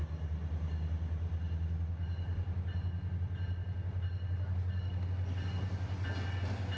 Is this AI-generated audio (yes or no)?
no